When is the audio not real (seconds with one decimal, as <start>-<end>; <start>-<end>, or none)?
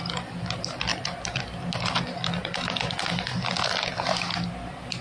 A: none